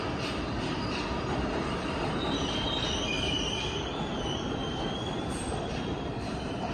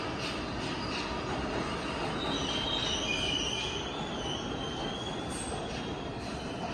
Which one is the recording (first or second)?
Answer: second